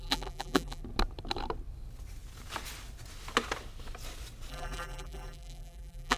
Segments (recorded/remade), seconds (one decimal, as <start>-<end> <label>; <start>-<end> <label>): 0.0-0.8 remade; 0.8-4.5 recorded; 4.5-6.2 remade